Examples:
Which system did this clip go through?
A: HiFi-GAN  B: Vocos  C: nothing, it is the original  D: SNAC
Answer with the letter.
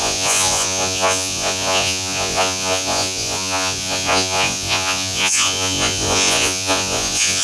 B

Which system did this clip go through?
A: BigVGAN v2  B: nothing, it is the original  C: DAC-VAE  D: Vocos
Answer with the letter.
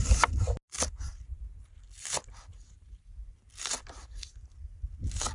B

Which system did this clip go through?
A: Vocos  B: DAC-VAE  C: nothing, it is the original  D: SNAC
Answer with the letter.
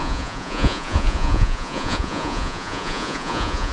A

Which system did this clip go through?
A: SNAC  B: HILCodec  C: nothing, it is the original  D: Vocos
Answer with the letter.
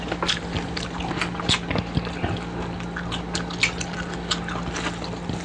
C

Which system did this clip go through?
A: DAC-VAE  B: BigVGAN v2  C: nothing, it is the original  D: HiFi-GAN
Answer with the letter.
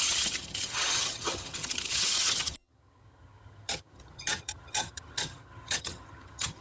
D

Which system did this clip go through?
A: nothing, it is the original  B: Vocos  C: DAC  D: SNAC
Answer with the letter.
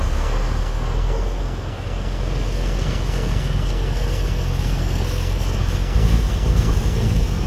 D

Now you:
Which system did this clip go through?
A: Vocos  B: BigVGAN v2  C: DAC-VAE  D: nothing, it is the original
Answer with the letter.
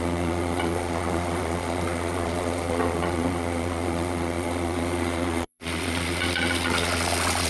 A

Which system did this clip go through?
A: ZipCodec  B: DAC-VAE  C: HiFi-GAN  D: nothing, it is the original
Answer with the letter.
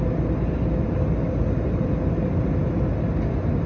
D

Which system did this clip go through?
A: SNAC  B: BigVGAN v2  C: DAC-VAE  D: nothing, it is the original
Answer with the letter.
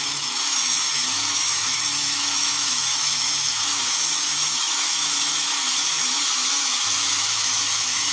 C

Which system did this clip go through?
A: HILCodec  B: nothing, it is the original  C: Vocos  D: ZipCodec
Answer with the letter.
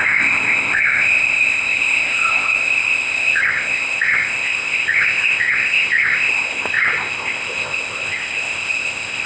D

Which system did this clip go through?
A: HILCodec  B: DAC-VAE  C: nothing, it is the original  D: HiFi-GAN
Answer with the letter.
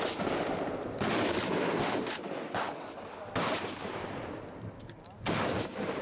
C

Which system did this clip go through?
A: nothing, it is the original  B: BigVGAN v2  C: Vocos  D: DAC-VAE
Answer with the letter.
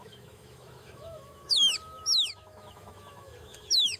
D